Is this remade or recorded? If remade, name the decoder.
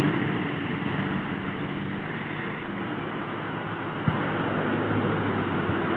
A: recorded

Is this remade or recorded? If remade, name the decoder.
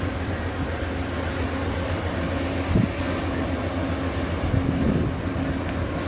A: recorded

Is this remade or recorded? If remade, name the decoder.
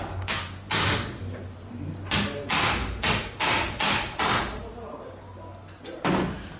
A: recorded